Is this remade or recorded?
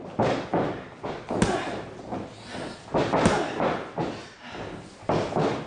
recorded